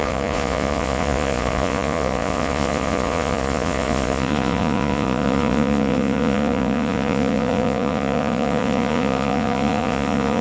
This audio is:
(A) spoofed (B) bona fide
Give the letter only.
A